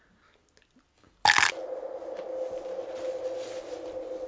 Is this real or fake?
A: real